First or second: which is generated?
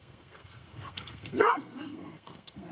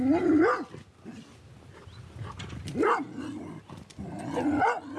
first